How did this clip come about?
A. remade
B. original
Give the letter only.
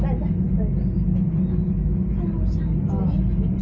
B